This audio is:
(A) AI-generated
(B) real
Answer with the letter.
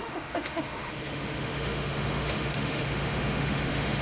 A